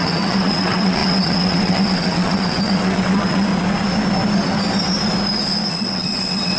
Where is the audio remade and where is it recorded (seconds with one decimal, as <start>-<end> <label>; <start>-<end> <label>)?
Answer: 0.0-3.5 remade; 3.5-5.7 recorded; 5.7-6.6 remade